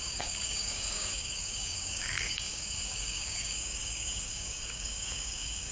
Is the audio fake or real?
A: fake